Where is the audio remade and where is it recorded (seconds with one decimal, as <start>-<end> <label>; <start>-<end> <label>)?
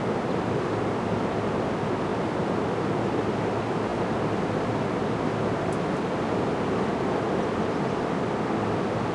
0.0-9.1 recorded